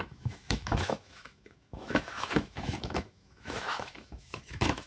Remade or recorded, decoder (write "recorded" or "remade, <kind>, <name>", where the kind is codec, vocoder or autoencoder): remade, autoencoder, DAC-VAE